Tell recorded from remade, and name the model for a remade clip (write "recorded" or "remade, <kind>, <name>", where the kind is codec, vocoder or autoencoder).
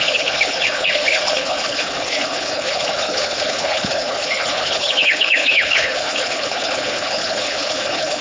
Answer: remade, codec, HILCodec